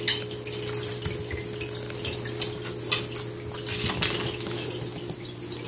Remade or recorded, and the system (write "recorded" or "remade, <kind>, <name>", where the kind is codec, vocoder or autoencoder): recorded